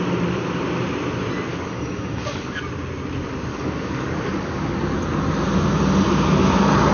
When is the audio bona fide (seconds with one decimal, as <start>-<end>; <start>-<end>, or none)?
0.0-1.5; 2.6-3.5; 5.0-6.9